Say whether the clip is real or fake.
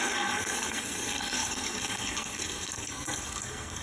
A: fake